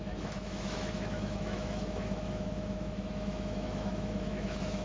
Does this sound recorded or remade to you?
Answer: remade